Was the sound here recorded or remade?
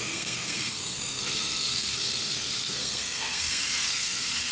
remade